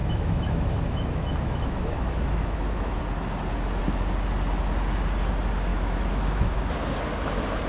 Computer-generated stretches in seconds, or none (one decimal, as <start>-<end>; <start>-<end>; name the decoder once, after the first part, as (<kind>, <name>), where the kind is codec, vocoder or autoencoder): 0.0-3.0 (autoencoder, DAC-VAE); 5.7-6.6